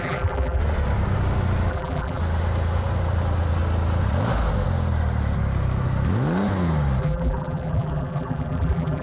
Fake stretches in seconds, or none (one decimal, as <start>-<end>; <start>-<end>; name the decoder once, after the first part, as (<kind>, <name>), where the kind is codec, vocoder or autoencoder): 0.0-0.6 (vocoder, BigVGAN v2); 1.7-2.2; 7.0-9.0